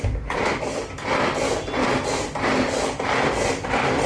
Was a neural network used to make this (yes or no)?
yes